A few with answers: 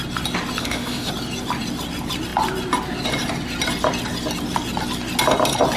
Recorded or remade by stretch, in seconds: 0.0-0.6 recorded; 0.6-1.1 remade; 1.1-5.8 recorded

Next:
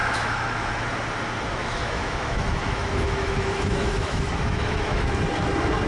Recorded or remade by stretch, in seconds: 0.0-0.7 remade; 0.7-1.6 recorded; 1.6-5.1 remade; 5.1-5.9 recorded

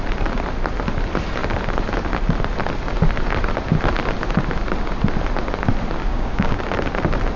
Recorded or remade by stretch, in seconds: 0.0-6.1 recorded; 6.1-6.6 remade; 6.6-7.4 recorded

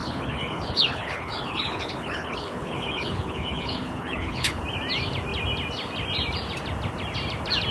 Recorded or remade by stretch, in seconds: 0.0-4.6 remade; 4.6-7.7 recorded